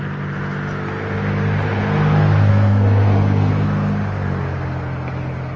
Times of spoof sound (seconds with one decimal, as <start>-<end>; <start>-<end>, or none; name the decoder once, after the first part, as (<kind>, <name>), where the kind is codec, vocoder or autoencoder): 2.5-3.5 (codec, SNAC)